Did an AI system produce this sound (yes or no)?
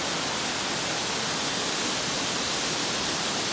no